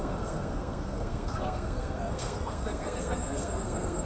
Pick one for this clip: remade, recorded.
remade